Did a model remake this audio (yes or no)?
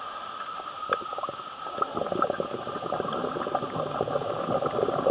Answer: no